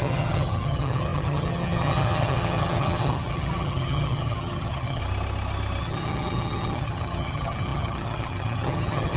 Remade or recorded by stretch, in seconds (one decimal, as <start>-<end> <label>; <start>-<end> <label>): 0.0-5.0 remade; 5.0-5.8 recorded; 5.8-9.2 remade